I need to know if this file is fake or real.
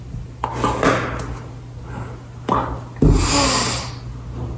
real